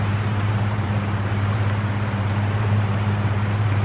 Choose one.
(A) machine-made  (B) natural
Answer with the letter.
A